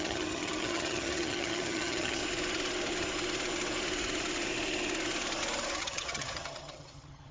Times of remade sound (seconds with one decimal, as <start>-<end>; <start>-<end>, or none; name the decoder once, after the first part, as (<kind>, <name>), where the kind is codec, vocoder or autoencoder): 0.0-2.2 (vocoder, HiFi-GAN); 5.8-7.3